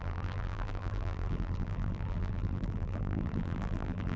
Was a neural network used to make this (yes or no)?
yes